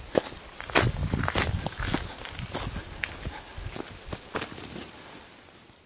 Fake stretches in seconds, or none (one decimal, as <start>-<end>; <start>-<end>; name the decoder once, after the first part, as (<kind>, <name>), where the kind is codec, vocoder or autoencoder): none